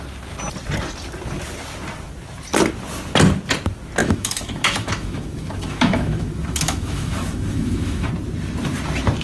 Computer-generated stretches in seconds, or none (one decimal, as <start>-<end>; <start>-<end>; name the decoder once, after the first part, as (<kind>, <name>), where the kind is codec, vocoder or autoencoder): 4.0-8.1 (autoencoder, DAC-VAE)